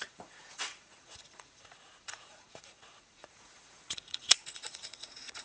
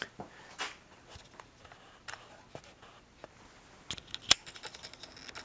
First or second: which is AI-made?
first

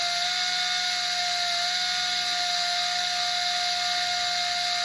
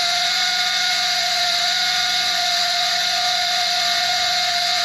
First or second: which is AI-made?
second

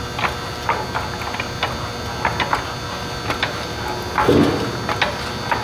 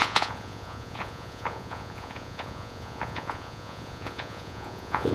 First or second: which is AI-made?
second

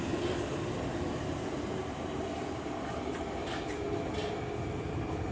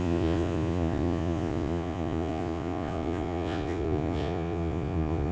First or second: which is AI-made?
second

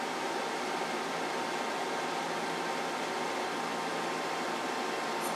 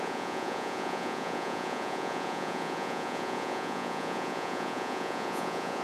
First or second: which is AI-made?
second